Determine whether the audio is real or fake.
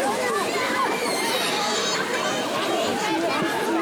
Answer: fake